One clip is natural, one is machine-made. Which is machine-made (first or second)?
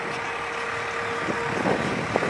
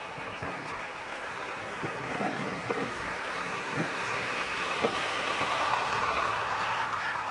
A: second